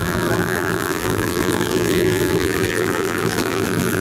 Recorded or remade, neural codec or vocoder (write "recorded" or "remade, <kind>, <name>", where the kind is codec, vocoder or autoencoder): remade, vocoder, BigVGAN v2